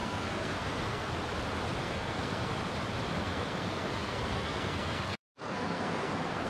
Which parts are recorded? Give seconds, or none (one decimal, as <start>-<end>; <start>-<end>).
1.2-1.8; 2.5-3.2